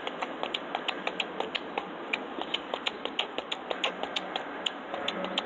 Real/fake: real